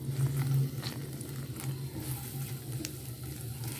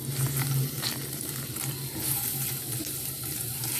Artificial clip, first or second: second